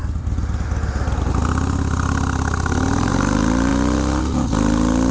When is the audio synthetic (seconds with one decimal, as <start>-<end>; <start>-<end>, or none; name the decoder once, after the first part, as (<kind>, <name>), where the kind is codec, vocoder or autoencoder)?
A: none